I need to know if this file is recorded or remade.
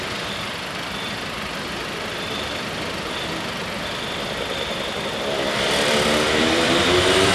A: remade